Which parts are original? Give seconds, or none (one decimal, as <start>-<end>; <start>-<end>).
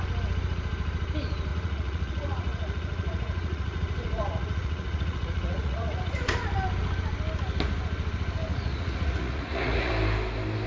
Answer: 0.0-1.5; 6.4-8.5; 9.9-10.7